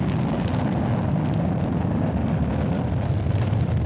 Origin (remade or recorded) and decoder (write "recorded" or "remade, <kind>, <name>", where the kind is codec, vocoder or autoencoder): recorded